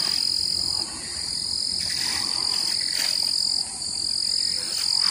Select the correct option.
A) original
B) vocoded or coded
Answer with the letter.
A